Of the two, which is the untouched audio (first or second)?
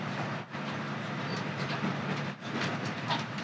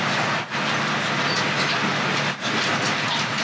second